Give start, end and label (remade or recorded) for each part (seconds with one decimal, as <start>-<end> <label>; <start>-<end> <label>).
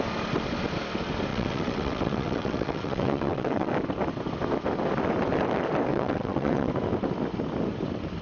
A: 0.0-1.3 recorded; 1.3-3.7 remade; 3.7-5.9 recorded; 5.9-6.7 remade; 6.7-8.2 recorded